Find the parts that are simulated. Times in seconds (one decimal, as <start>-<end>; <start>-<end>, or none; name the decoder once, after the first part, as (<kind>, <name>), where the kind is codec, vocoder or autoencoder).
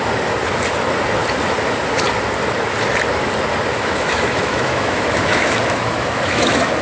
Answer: 3.7-6.8 (autoencoder, DAC-VAE)